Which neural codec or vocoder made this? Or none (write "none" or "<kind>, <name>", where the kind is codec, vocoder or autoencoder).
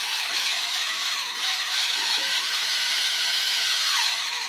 autoencoder, DAC-VAE